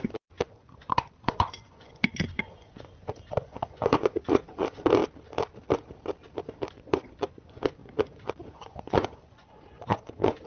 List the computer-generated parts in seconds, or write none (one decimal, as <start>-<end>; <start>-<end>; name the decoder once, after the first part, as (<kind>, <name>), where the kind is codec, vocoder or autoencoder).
0.0-5.0 (vocoder, Vocos); 6.7-10.5